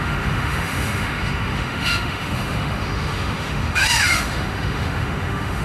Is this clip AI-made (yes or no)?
yes